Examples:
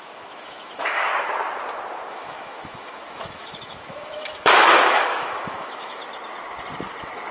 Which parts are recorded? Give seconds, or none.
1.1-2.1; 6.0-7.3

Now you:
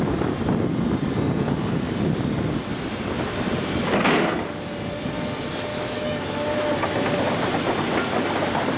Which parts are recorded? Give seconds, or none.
0.0-5.7; 6.7-8.8

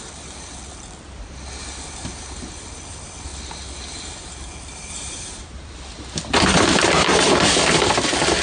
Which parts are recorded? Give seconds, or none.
0.0-8.4

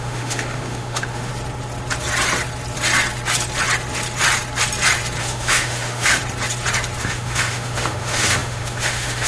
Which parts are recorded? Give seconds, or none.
1.3-5.2; 6.2-7.0